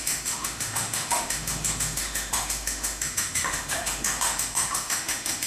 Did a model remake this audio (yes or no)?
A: yes